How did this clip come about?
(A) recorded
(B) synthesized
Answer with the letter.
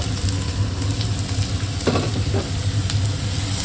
A